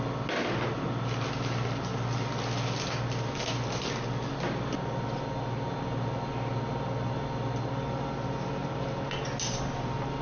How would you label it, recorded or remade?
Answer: recorded